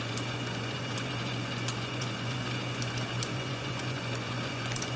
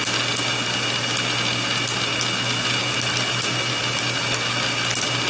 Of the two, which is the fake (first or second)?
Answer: first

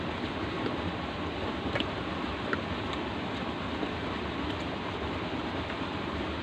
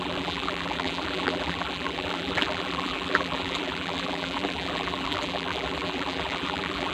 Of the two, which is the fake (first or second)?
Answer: second